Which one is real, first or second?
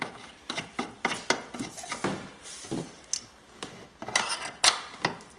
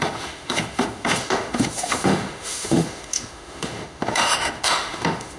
first